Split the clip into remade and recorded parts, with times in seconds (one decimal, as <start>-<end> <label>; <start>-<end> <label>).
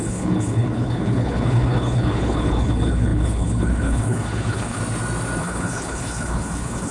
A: 0.0-4.8 remade; 4.8-5.4 recorded; 5.4-6.9 remade